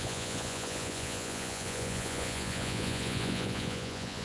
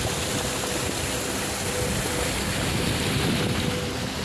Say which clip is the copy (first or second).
first